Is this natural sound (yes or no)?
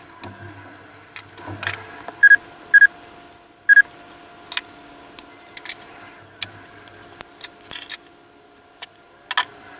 yes